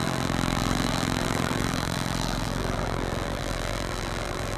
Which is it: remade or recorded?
remade